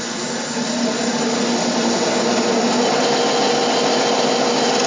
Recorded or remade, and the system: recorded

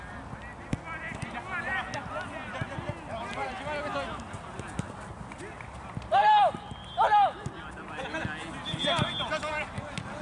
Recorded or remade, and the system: recorded